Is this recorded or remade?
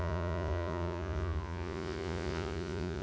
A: remade